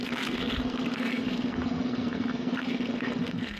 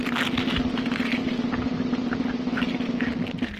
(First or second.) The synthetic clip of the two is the first